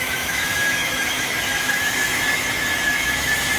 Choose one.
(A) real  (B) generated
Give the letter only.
B